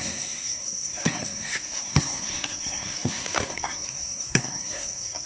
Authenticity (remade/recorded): remade